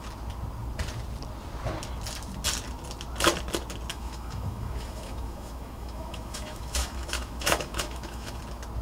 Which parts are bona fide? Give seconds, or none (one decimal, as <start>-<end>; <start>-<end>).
0.0-3.9; 8.4-8.8